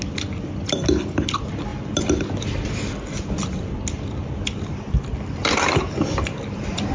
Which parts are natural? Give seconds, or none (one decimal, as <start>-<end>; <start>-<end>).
0.0-6.9